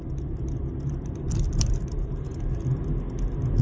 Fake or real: real